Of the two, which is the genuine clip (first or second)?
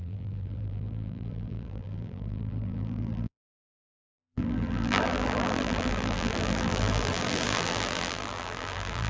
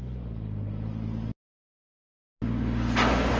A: second